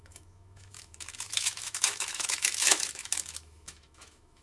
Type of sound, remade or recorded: remade